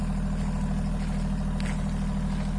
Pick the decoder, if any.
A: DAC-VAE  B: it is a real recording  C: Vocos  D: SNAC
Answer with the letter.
B